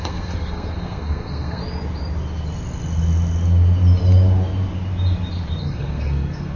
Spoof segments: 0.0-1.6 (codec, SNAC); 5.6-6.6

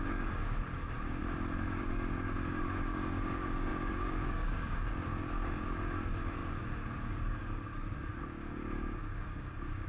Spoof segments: 0.0-1.2 (codec, DAC); 1.8-9.9

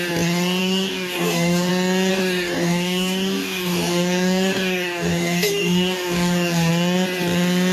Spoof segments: 0.6-1.7 (codec, DAC); 2.1-6.7

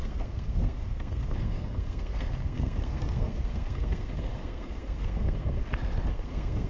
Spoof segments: 0.0-5.6 (codec, SNAC); 6.1-6.7